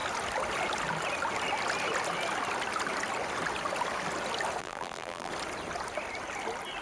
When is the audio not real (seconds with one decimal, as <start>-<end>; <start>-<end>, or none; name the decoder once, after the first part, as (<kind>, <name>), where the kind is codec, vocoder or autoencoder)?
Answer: 4.6-5.3 (vocoder, BigVGAN v2)

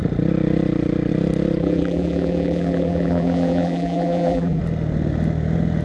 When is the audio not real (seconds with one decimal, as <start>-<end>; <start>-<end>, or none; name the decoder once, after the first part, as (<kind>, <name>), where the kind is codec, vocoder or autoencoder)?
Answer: 1.6-4.6 (vocoder, BigVGAN v2)

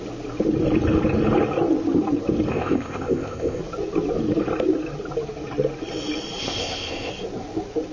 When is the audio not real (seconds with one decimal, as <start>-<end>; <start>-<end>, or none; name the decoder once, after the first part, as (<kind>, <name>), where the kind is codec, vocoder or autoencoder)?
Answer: 2.5-3.6 (codec, ZipCodec); 6.4-7.1

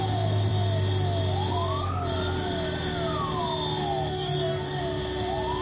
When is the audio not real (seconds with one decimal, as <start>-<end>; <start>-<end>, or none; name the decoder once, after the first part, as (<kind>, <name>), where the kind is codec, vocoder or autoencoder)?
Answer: 4.1-4.8 (codec, DAC)

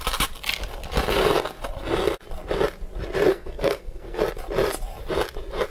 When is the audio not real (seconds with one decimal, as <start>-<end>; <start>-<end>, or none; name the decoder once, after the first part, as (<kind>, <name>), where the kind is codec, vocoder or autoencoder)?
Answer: 3.3-4.2 (codec, SNAC)

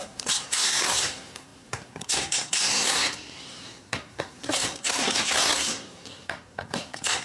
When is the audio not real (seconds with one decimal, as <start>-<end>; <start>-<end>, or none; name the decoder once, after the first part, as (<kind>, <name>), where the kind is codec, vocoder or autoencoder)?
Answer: 0.0-7.2 (codec, SNAC)

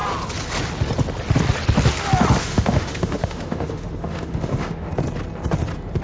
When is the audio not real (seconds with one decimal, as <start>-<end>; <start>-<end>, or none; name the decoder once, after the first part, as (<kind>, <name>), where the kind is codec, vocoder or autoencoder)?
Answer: 2.4-4.9 (autoencoder, DAC-VAE)

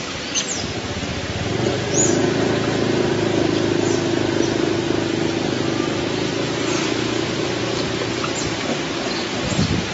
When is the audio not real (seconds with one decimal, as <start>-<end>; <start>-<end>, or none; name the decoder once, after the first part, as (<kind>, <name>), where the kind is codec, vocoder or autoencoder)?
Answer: none